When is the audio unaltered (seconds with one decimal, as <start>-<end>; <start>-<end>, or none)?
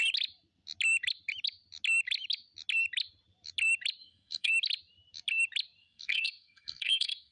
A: 0.0-4.0; 4.5-5.8